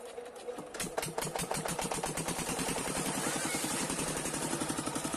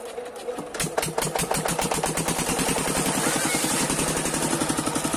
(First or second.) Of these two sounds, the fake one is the first